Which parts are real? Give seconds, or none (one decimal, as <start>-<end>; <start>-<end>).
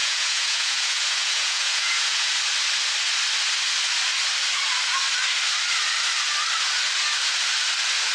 2.3-8.1